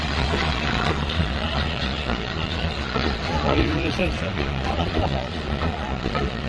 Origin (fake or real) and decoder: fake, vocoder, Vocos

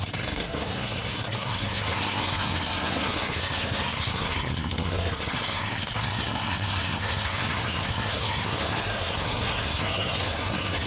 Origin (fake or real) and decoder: fake, codec, SNAC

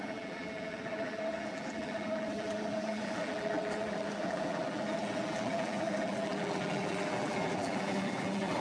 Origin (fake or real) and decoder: fake, vocoder, BigVGAN v2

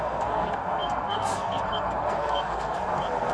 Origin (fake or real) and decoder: fake, codec, SNAC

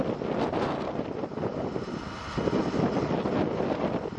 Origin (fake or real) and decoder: real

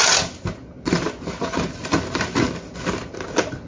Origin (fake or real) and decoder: real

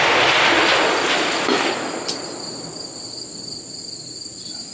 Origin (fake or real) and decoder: real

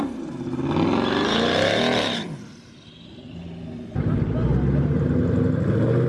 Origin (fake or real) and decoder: real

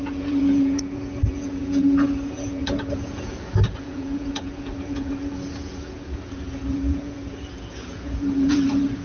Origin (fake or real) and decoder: fake, vocoder, Vocos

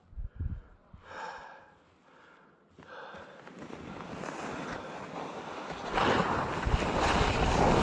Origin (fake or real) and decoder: real